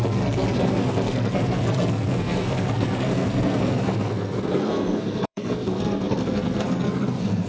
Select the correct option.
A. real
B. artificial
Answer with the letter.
B